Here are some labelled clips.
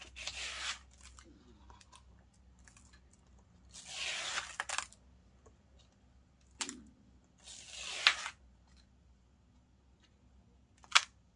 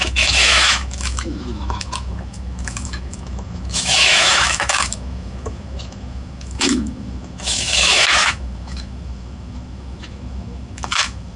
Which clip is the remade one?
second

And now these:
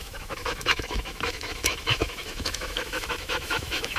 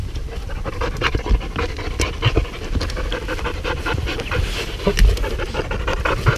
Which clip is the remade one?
first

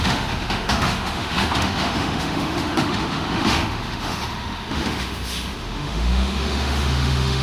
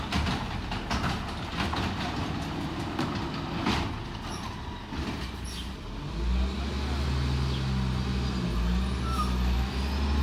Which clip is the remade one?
first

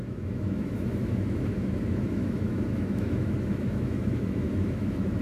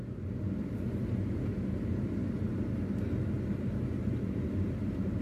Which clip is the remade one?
first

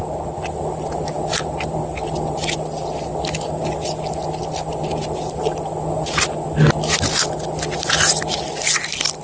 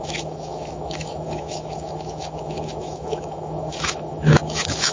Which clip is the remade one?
second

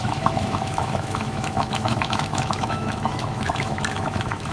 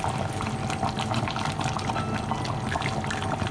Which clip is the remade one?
first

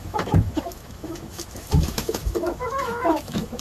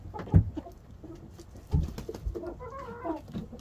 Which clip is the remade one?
first